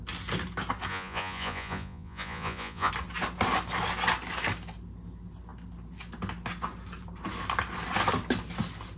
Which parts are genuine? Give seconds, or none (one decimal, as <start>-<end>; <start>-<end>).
0.0-0.9; 2.9-9.0